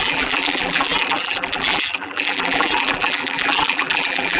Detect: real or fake fake